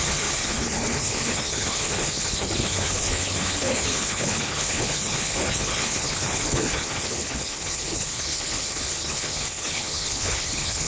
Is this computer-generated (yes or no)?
yes